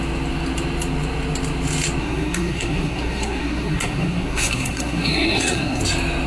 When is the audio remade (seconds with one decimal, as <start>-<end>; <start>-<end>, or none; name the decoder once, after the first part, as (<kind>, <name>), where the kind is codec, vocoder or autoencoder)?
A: 2.0-5.8 (codec, SNAC)